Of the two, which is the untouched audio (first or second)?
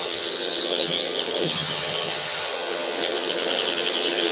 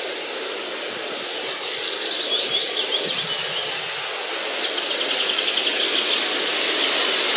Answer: second